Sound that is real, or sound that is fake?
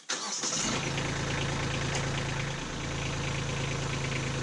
real